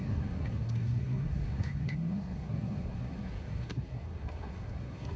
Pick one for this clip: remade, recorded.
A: remade